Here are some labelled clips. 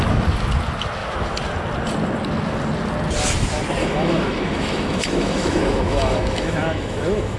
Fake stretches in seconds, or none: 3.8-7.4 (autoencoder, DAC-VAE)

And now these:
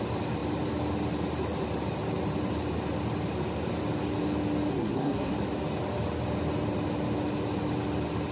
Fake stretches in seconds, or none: 4.7-5.3 (codec, SNAC)